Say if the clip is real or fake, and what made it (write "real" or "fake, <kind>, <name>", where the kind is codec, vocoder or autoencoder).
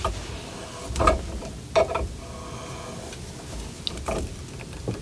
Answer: real